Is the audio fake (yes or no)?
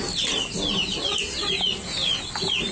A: no